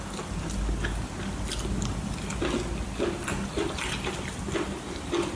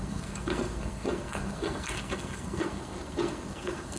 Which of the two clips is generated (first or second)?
second